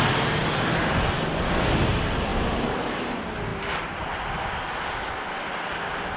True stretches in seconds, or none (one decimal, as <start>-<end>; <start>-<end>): 0.0-6.2